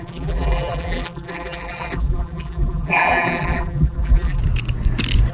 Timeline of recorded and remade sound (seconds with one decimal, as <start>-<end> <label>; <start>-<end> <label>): 0.0-4.4 remade; 4.4-5.3 recorded